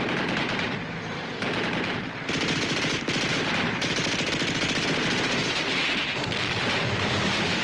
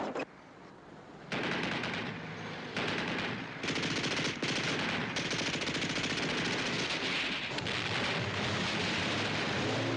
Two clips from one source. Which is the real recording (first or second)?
second